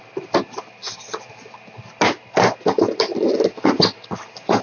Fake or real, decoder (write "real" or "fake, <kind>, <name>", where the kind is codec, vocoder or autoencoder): real